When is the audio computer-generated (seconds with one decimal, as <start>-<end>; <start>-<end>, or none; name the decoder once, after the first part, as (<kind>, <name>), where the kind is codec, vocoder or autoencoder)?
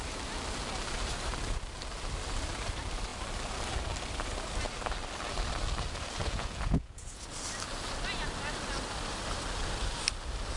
6.2-7.2 (vocoder, Vocos)